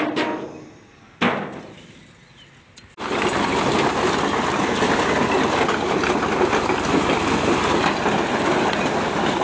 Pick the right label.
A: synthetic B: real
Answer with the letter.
B